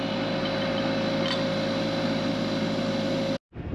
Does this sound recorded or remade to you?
recorded